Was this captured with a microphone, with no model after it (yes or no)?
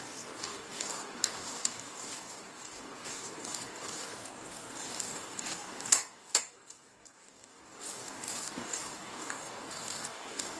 no